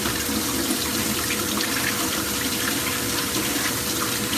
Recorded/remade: remade